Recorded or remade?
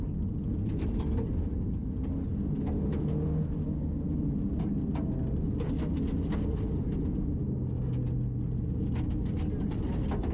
recorded